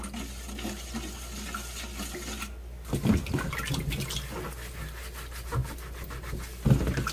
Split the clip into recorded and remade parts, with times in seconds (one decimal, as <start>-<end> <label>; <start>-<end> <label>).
0.0-7.1 recorded